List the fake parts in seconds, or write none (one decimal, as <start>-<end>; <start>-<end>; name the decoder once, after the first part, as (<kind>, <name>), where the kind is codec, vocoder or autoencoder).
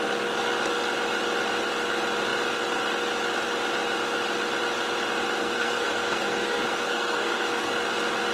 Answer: 5.4-7.7 (codec, SNAC)